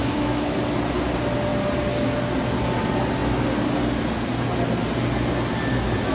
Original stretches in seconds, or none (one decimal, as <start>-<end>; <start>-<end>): 0.6-6.1